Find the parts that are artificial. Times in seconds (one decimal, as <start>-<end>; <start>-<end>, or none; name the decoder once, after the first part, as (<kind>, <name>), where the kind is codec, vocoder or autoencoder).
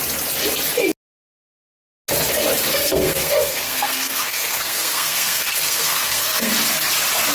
2.7-6.5 (codec, SNAC)